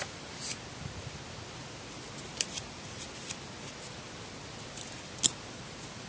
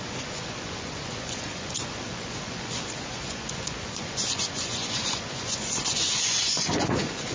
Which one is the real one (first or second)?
first